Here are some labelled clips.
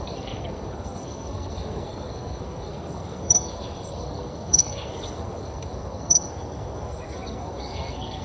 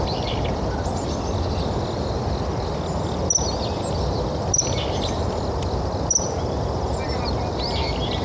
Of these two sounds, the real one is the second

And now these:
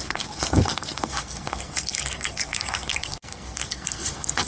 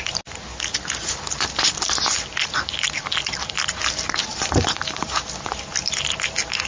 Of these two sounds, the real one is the second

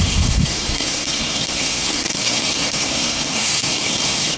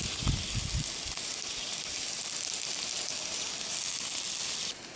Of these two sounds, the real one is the second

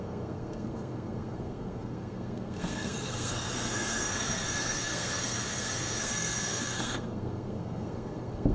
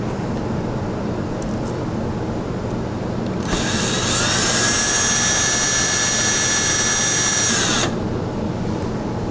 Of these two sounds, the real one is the second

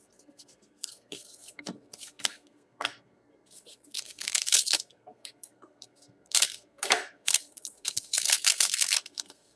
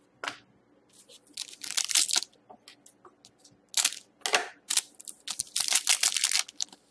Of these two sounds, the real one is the second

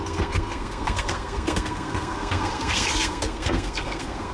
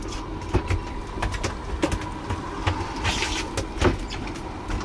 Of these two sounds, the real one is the second